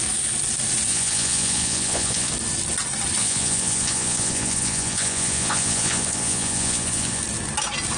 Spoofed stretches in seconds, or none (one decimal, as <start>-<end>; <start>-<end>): 0.9-2.3; 3.2-7.2